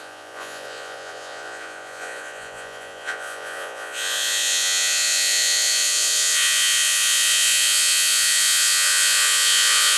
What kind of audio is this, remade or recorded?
remade